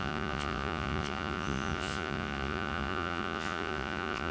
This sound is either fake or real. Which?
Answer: fake